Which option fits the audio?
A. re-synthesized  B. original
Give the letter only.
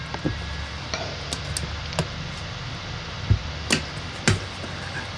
B